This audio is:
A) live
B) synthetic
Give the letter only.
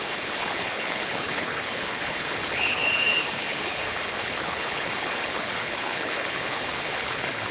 B